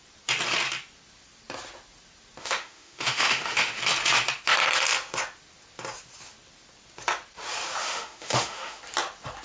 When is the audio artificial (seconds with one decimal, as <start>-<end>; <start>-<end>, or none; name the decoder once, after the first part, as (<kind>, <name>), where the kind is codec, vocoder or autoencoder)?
2.4-3.8 (autoencoder, DAC-VAE); 7.8-8.8

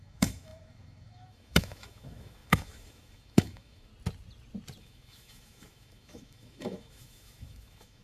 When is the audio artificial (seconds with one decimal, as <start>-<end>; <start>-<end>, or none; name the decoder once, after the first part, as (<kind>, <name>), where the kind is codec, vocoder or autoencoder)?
0.0-3.9 (autoencoder, DAC-VAE); 4.8-8.0